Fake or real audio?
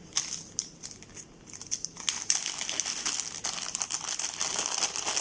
real